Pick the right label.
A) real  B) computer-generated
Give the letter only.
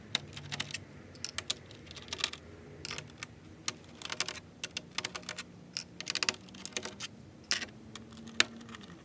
A